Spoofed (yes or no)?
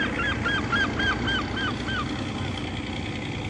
no